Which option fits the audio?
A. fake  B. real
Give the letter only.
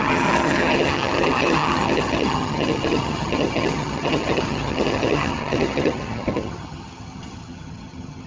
A